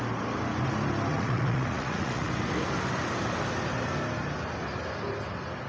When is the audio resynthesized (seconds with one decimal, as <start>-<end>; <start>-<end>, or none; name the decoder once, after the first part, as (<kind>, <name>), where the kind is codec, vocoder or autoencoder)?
1.1-2.3 (vocoder, Vocos)